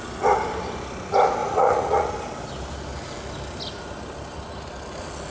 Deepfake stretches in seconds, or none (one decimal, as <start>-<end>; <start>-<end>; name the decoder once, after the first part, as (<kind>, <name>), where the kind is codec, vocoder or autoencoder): 1.4-2.1 (vocoder, Vocos)